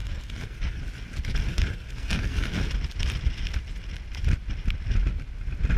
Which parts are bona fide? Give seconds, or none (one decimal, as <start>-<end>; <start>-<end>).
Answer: 0.8-1.5; 2.7-5.8